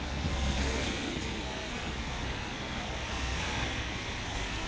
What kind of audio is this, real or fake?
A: fake